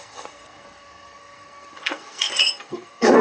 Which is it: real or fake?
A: fake